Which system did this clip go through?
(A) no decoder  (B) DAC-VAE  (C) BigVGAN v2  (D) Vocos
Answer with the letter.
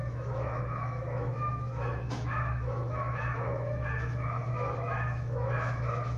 B